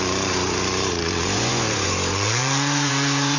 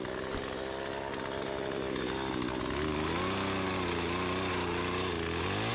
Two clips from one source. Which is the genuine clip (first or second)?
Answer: second